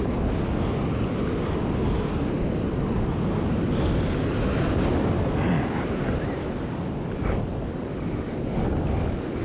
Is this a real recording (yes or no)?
yes